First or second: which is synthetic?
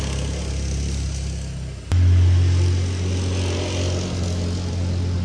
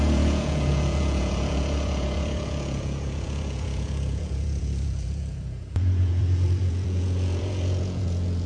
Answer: second